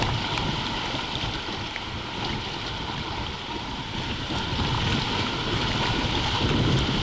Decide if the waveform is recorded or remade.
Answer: recorded